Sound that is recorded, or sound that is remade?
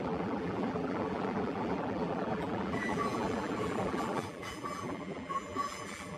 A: remade